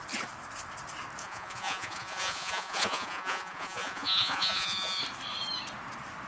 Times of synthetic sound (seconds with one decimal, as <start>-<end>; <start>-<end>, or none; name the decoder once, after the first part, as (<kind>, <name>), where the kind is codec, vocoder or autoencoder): 1.2-5.0 (vocoder, Vocos)